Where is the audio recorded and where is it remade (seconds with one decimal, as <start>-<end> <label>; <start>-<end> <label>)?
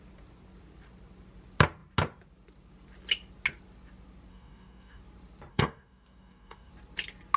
0.0-4.3 recorded; 4.3-5.0 remade; 5.0-5.5 recorded; 5.5-6.7 remade; 6.7-7.4 recorded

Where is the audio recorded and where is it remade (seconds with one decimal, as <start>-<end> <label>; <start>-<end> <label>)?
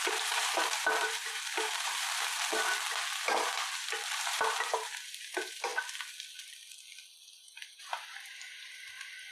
0.0-1.9 remade; 1.9-4.1 recorded; 4.1-5.7 remade; 5.7-7.4 recorded; 7.4-9.3 remade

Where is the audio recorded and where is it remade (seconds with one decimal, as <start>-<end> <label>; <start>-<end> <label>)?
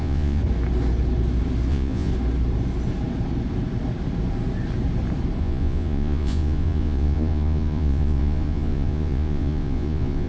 0.0-0.4 remade; 0.4-1.7 recorded; 1.7-2.1 remade; 2.1-5.4 recorded; 5.4-10.3 remade